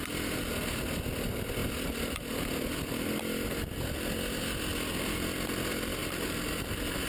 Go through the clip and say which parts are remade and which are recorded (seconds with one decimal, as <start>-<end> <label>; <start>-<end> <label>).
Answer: 0.0-6.0 recorded; 6.0-7.1 remade